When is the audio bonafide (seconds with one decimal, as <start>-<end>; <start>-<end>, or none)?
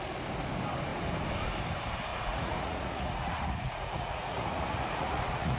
0.0-2.1